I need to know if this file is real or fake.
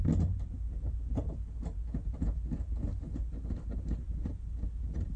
real